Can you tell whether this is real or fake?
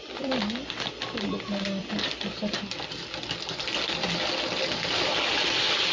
real